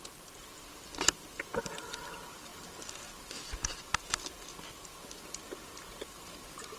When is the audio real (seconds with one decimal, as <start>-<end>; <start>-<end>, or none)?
0.0-6.8